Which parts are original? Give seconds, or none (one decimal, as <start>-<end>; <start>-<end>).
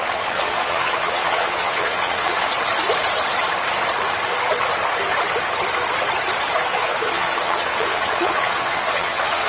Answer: 2.5-6.7